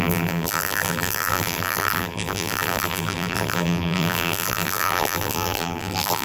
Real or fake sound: fake